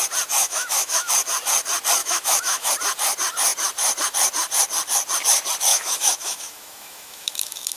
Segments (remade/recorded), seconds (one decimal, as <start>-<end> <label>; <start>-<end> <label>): 0.0-0.4 recorded; 0.4-1.1 remade; 1.1-2.0 recorded; 2.0-2.7 remade; 2.7-5.7 recorded; 5.7-7.8 remade